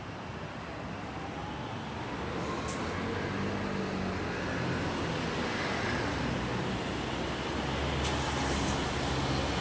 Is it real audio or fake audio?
real